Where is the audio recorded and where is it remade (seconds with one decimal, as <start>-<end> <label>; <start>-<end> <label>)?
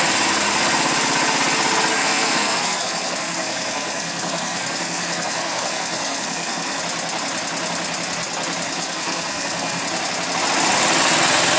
0.0-1.9 recorded; 1.9-6.8 remade; 6.8-8.7 recorded; 8.7-9.8 remade; 9.8-11.6 recorded